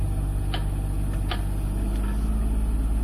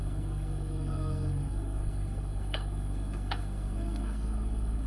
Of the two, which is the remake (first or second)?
second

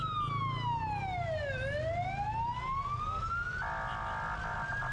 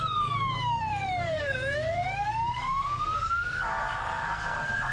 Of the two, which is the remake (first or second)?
second